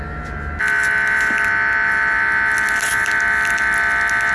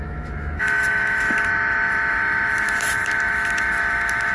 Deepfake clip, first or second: second